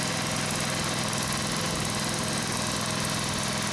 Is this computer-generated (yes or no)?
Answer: no